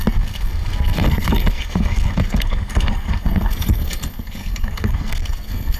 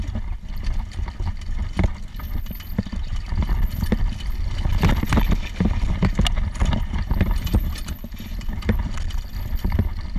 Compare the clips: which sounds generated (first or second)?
first